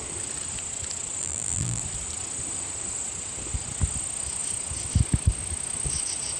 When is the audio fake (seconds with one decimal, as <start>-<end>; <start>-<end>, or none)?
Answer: 1.2-1.8